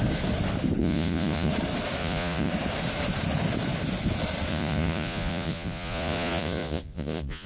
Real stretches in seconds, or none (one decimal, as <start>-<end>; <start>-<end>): 0.0-0.8; 1.5-2.0; 2.5-4.5